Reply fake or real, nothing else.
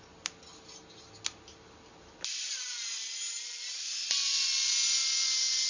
real